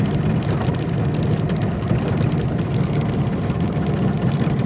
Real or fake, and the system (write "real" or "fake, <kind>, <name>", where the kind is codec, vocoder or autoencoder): real